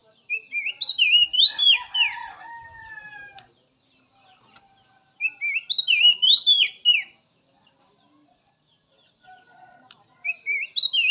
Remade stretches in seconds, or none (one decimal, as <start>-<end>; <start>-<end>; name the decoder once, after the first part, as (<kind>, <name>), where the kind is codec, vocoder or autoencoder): none